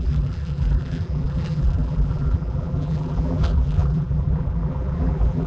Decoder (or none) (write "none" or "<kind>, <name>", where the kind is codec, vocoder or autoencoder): vocoder, BigVGAN v2